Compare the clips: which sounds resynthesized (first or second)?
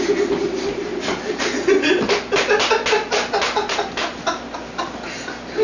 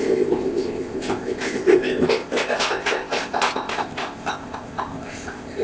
second